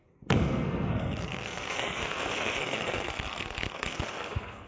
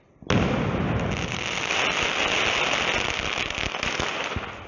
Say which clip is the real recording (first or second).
second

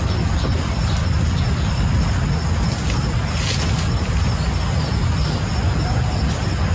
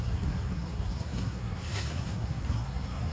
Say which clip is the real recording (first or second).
first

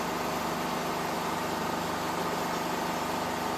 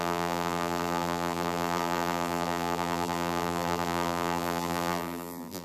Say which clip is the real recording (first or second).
first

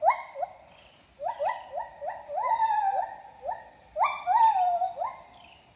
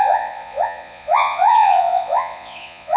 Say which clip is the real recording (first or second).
first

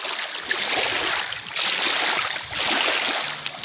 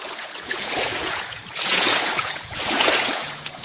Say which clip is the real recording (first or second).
first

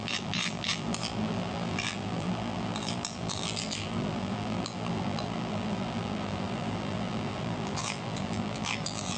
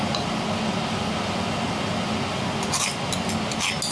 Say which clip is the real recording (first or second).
second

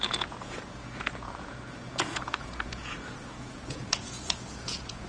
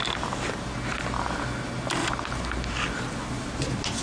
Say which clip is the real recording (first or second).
second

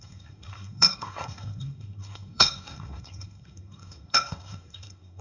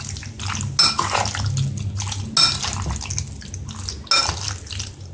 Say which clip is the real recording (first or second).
second